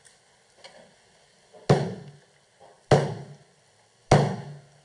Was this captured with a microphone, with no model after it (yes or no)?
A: yes